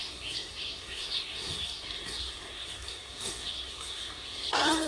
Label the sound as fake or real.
fake